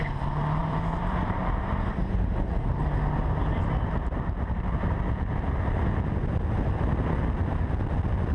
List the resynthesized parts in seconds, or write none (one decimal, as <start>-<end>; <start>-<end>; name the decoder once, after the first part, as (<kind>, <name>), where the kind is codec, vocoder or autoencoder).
0.6-2.3 (vocoder, BigVGAN v2)